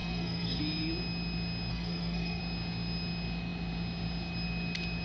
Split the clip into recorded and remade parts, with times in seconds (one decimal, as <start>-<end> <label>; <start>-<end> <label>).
0.0-0.6 remade; 0.6-1.7 recorded; 1.7-2.4 remade; 2.4-5.0 recorded